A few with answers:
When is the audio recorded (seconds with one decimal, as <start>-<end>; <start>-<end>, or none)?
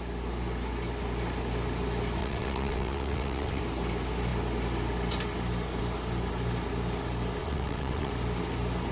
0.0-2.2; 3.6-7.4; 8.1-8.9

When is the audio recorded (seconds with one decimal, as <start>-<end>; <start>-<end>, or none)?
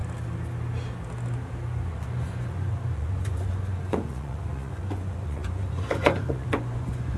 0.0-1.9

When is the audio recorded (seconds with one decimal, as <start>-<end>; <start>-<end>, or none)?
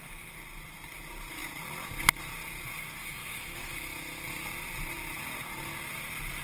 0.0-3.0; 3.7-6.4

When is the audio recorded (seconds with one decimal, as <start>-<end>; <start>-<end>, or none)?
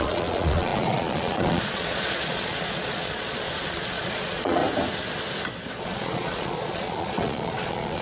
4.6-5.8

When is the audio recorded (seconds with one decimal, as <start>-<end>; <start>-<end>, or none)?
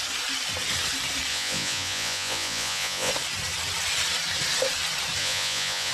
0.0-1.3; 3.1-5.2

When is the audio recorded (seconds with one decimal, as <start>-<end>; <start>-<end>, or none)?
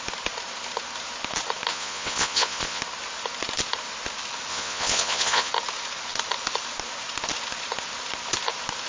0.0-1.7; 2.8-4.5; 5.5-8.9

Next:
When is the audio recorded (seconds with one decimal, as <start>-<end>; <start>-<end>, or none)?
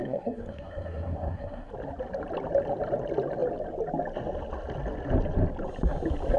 1.7-6.4